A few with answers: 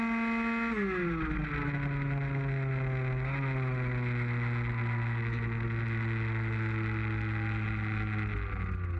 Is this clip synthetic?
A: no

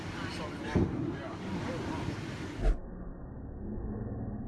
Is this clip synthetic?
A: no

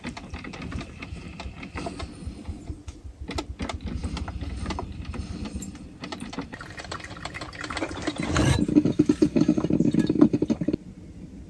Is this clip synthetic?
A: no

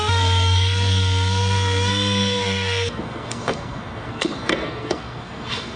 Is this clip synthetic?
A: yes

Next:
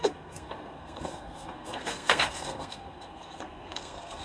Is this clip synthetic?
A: yes